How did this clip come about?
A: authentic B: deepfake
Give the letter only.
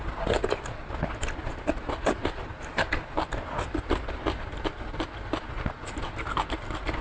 A